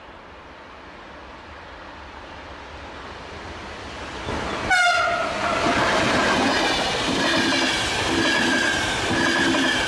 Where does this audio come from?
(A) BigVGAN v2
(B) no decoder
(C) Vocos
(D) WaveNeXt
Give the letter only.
B